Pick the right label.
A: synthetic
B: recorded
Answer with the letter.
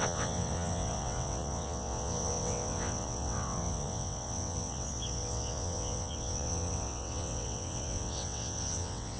A